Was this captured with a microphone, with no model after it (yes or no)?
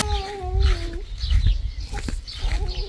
yes